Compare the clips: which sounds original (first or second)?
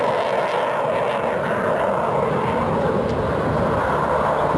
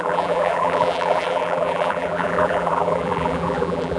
first